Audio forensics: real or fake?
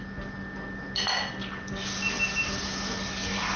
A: real